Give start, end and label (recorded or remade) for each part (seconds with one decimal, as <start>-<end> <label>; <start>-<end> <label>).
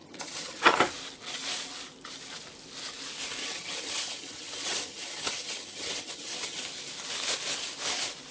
0.0-0.8 remade; 0.8-3.4 recorded; 3.4-6.6 remade; 6.6-8.3 recorded